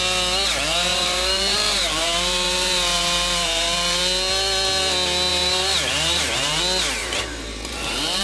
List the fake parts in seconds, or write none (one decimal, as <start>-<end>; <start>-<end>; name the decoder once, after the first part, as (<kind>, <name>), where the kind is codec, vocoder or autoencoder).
0.9-4.0 (vocoder, BigVGAN v2); 5.3-6.6; 7.0-8.2